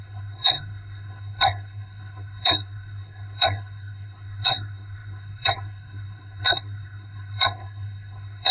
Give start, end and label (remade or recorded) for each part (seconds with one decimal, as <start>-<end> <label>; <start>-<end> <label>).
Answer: 0.0-8.5 remade